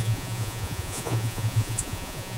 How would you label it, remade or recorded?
remade